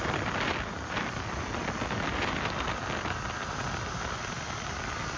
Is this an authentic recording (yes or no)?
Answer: yes